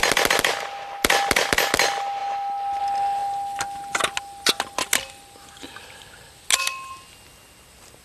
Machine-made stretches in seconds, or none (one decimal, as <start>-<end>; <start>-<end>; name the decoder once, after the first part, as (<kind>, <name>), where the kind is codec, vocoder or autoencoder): none